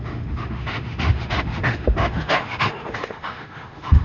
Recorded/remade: remade